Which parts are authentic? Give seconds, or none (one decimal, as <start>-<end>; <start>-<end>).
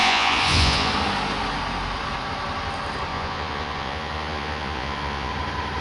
0.9-3.1; 5.3-5.8